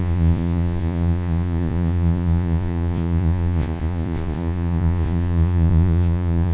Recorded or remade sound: remade